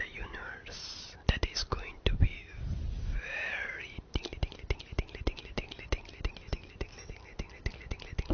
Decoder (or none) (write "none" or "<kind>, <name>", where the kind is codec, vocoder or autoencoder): none